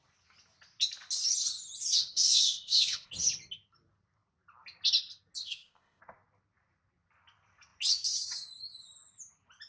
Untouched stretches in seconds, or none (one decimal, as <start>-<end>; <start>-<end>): 0.0-2.0; 3.1-5.4; 6.0-9.7

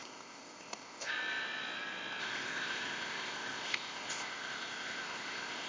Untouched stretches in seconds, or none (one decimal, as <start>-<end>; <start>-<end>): 1.1-2.2